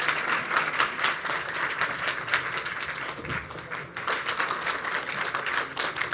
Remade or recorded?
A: recorded